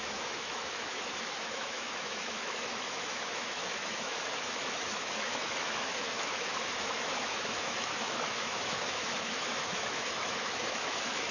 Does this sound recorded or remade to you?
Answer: remade